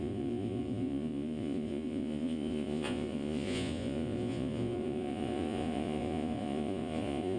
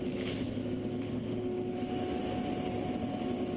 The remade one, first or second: first